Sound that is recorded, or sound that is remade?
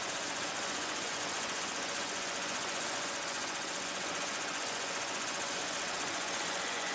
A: remade